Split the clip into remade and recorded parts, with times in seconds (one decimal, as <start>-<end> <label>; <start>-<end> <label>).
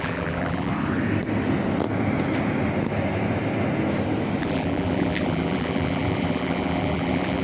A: 0.0-0.7 remade; 0.7-4.4 recorded; 4.4-7.4 remade